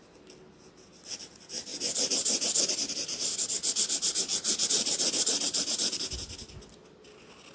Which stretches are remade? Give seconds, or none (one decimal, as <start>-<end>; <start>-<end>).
none